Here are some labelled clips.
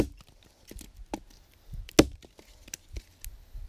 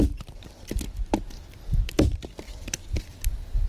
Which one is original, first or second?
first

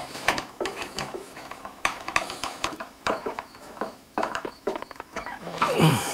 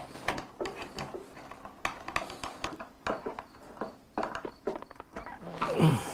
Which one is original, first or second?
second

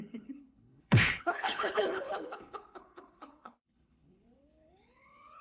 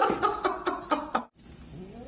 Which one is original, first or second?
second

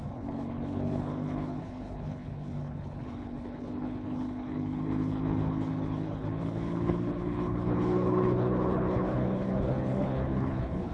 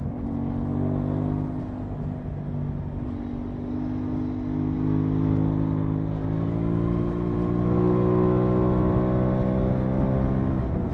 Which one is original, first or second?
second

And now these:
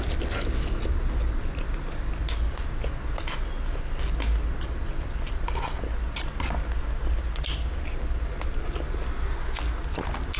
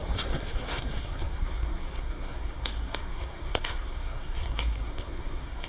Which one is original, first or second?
first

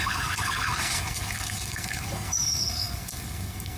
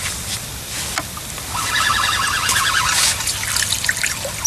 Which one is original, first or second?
second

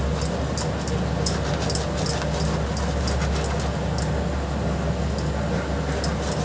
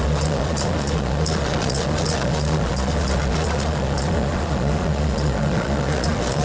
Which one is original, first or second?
first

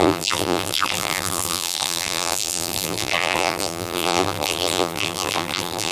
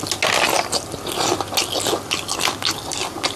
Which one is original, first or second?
second